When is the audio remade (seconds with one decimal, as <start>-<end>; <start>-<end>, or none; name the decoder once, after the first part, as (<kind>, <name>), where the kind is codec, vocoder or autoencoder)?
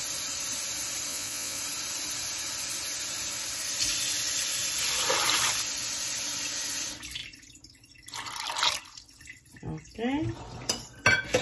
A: 1.1-1.6 (vocoder, Vocos)